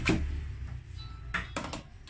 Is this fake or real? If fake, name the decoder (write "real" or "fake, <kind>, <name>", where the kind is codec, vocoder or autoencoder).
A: real